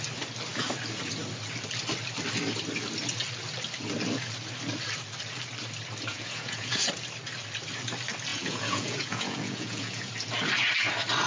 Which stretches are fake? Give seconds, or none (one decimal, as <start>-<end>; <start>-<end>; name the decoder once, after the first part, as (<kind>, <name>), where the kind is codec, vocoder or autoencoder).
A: 6.1-6.8 (vocoder, Vocos); 8.3-10.1